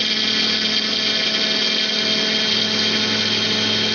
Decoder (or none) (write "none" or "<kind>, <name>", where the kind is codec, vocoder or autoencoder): none